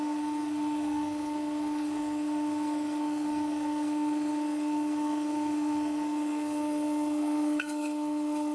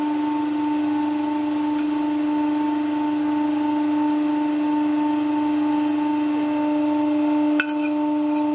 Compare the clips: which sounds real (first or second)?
second